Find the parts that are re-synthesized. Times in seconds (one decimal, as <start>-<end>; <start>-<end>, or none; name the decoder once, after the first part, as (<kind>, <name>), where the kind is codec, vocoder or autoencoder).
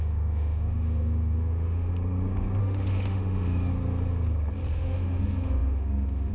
0.0-1.9 (autoencoder, DAC-VAE); 2.6-3.7; 4.7-6.3